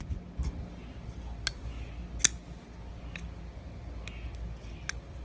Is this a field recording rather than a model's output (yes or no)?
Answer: yes